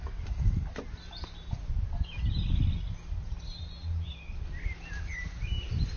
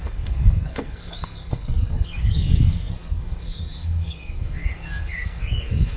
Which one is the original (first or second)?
first